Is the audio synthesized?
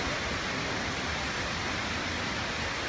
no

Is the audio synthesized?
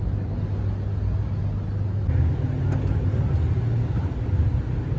no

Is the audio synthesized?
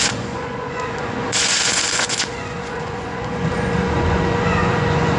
yes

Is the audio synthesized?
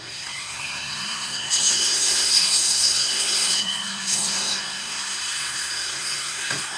yes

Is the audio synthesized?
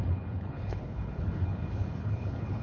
yes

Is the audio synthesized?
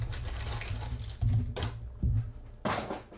no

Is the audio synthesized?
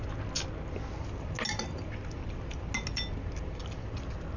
no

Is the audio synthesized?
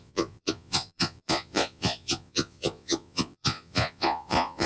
yes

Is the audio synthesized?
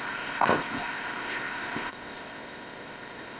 yes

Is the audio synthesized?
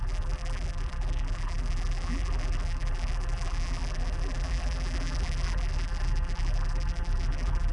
yes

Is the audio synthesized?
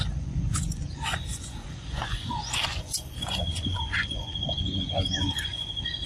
yes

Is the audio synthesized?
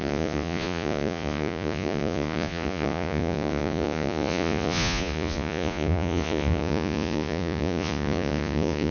yes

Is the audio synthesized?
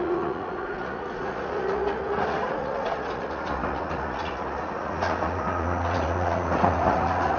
yes